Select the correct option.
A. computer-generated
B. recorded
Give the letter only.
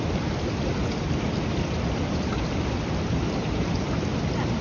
B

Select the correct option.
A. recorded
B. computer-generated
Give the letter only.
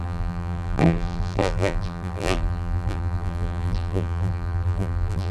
B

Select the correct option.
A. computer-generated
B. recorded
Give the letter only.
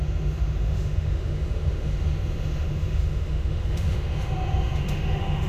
A